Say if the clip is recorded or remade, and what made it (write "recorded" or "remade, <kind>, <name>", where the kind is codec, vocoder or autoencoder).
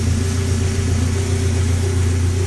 recorded